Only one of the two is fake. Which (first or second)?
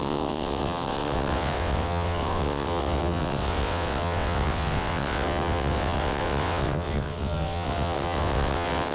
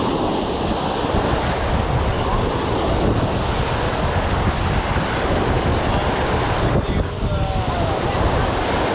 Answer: first